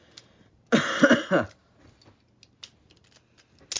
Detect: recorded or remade recorded